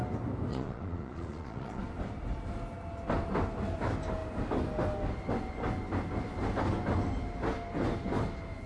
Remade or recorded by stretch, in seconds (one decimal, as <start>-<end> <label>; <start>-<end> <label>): 0.0-0.5 recorded; 0.5-1.8 remade; 1.8-8.7 recorded